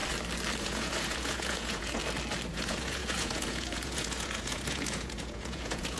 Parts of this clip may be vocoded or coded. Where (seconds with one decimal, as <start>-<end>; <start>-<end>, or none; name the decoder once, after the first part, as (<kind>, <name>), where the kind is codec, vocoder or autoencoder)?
0.6-2.0 (vocoder, Vocos); 2.5-6.0